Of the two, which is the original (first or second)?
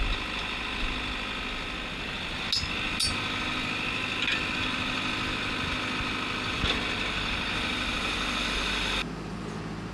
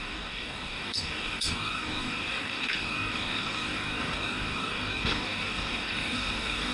first